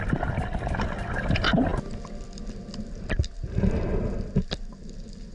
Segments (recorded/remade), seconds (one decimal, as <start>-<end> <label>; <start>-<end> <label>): 0.0-5.3 recorded